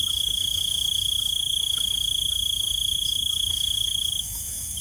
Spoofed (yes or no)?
yes